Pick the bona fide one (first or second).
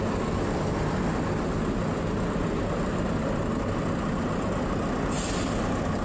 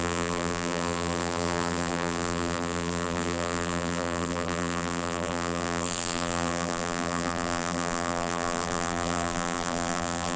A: first